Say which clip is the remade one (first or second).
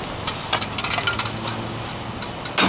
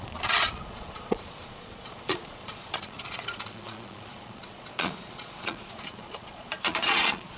second